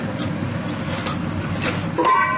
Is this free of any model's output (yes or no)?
yes